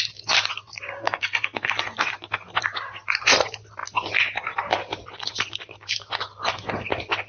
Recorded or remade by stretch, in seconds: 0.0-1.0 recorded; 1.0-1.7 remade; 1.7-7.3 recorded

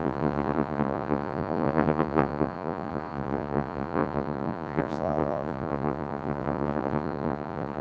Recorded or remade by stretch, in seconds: 0.0-7.8 remade

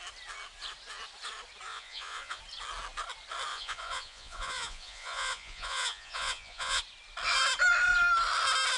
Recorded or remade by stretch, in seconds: 0.0-1.7 recorded; 1.7-2.4 remade; 2.4-3.5 recorded; 3.5-6.8 remade; 6.8-8.8 recorded

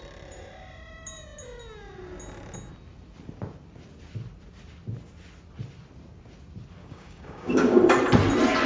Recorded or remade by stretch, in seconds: 0.0-6.8 recorded; 6.8-7.8 remade; 7.8-8.7 recorded

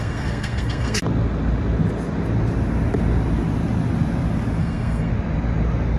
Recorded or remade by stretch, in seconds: 0.0-1.0 remade; 1.0-4.6 recorded; 4.6-5.1 remade; 5.1-6.0 recorded